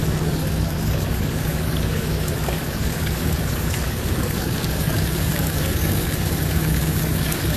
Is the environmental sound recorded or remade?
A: remade